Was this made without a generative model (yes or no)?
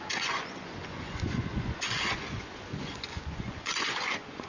no